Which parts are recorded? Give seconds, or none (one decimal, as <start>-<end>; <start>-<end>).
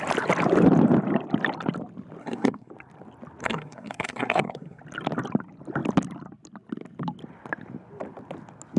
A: 0.0-2.2; 2.7-3.4; 4.8-8.8